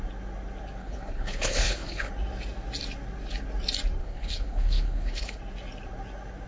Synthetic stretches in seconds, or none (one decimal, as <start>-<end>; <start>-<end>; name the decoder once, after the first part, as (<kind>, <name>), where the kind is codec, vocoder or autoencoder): 0.8-2.1 (codec, HILCodec); 4.0-5.4